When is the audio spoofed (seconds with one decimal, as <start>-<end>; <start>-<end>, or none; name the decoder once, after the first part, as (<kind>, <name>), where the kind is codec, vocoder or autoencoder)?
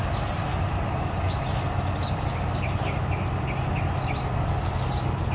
none